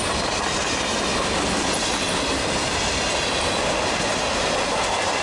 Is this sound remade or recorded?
recorded